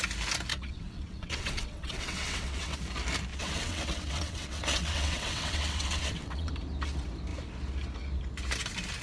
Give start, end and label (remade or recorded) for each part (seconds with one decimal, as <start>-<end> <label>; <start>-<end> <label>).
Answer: 0.0-0.5 recorded; 0.5-2.8 remade; 2.8-3.3 recorded; 3.3-6.5 remade; 6.5-9.0 recorded